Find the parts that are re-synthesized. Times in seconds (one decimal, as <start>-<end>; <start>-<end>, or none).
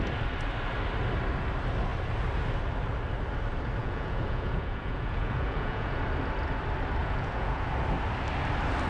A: 3.8-6.0; 7.0-7.7